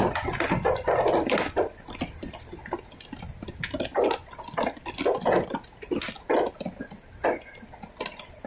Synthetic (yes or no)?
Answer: no